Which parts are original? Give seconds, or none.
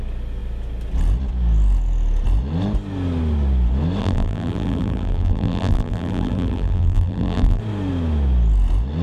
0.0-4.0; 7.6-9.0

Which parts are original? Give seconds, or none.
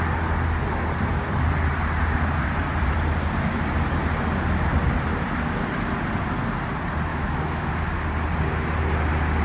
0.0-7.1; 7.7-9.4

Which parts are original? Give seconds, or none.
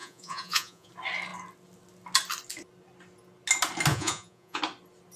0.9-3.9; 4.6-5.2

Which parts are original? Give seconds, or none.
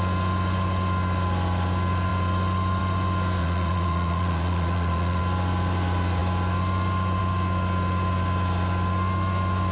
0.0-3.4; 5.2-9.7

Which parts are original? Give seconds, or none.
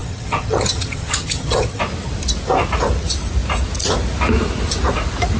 1.8-5.4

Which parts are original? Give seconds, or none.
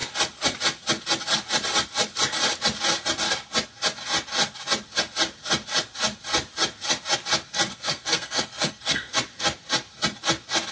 0.0-7.7; 9.1-10.7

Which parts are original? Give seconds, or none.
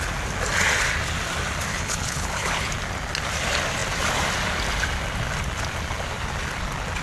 0.0-1.7; 2.7-7.0